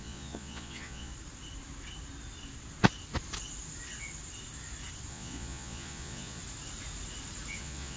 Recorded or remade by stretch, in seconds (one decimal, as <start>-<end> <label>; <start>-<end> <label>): 0.0-1.1 remade; 1.1-5.1 recorded; 5.1-6.4 remade; 6.4-7.6 recorded; 7.6-8.0 remade